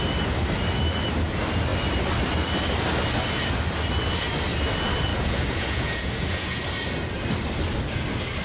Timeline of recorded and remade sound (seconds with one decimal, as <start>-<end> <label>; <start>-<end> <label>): 0.0-5.1 recorded; 5.1-6.6 remade; 6.6-8.4 recorded